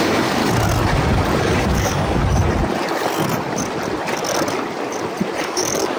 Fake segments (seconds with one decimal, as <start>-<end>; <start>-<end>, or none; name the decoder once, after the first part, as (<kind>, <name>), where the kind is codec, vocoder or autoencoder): 0.0-0.4 (codec, DAC); 1.4-2.2; 5.4-6.0